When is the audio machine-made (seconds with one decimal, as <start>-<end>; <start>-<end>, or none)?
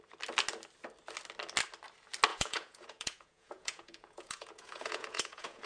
2.3-5.7